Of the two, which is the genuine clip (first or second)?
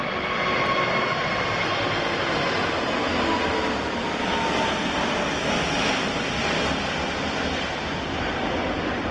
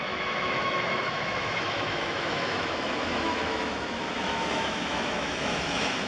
first